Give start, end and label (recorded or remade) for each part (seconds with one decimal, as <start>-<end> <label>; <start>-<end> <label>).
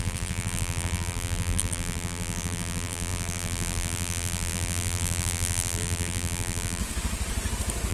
0.0-6.8 remade; 6.8-7.9 recorded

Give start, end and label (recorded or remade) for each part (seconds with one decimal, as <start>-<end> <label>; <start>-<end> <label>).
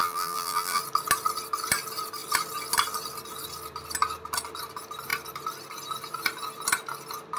0.0-0.8 remade; 0.8-7.4 recorded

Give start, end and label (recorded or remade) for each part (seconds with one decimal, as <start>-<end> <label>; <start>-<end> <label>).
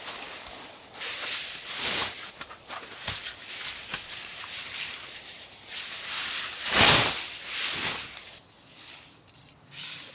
0.0-2.0 recorded; 2.0-3.2 remade; 3.2-3.8 recorded; 3.8-6.7 remade; 6.7-10.1 recorded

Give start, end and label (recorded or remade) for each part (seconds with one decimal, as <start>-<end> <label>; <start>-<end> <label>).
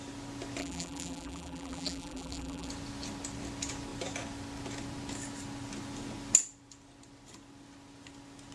0.0-0.6 recorded; 0.6-2.7 remade; 2.7-8.5 recorded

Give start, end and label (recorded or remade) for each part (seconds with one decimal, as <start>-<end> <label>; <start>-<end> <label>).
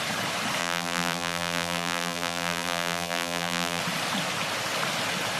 0.0-0.6 recorded; 0.6-3.8 remade; 3.8-5.4 recorded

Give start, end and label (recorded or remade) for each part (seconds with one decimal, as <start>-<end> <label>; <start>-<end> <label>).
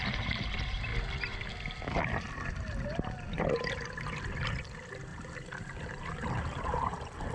0.0-5.1 recorded; 5.1-7.3 remade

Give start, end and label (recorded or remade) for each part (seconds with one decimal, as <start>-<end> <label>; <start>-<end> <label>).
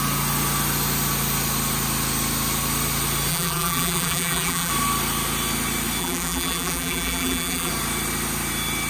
0.0-3.3 recorded; 3.3-4.7 remade; 4.7-6.0 recorded; 6.0-7.7 remade; 7.7-8.9 recorded